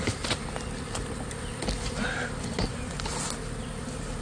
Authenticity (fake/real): real